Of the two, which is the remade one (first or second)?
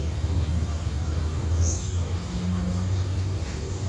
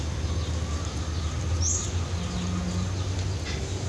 first